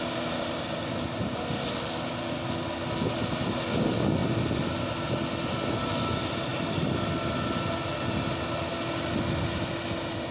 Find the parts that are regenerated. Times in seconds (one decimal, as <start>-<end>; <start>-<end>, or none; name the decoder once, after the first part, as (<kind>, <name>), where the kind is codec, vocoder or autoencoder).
none